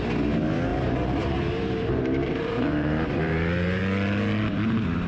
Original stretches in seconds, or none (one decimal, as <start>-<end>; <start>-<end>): 0.0-0.7; 3.8-5.1